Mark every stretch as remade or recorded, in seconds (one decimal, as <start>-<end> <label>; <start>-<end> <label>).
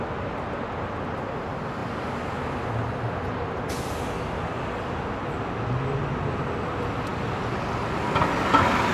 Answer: 0.0-8.9 recorded